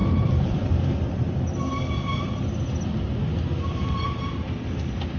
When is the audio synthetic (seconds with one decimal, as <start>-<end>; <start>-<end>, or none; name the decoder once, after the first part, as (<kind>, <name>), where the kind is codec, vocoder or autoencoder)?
0.0-5.2 (vocoder, BigVGAN v2)